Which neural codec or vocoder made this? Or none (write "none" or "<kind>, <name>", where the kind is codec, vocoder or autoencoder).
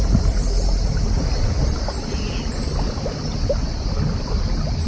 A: none